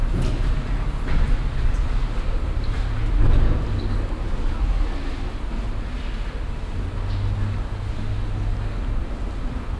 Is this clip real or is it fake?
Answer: real